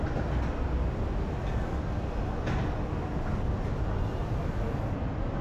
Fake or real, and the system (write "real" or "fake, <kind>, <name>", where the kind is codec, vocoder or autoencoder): real